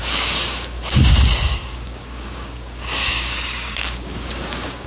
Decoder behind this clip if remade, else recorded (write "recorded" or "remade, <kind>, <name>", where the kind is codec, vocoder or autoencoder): remade, codec, DAC